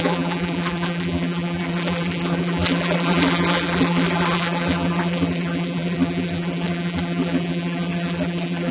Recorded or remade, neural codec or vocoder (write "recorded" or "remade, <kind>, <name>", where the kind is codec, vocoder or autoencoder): remade, vocoder, BigVGAN v2